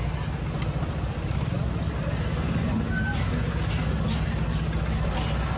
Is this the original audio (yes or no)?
yes